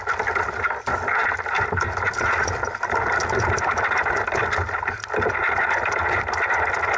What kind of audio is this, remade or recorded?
recorded